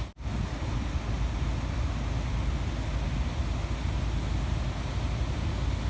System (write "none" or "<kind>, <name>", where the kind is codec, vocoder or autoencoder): none